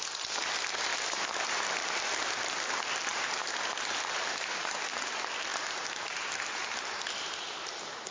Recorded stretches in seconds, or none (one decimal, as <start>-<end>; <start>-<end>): 0.0-0.9; 1.5-3.1; 5.1-5.5; 6.3-8.1

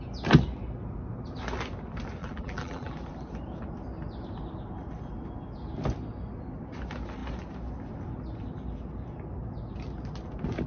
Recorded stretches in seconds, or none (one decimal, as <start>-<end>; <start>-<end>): 0.0-2.2; 2.9-10.7

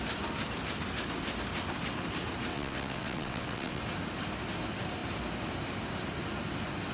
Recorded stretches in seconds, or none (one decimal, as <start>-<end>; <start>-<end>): 0.0-2.5; 3.8-6.9

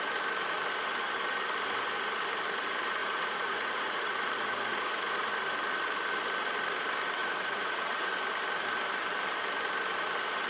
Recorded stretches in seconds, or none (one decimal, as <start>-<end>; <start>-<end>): 0.0-3.0; 5.3-7.2; 8.1-10.5

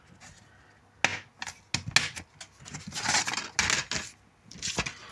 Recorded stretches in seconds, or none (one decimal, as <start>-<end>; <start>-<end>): 0.0-5.1

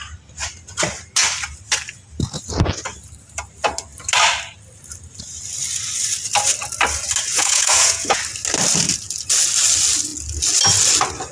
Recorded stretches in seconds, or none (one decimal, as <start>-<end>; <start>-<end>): 0.0-7.3; 8.2-11.3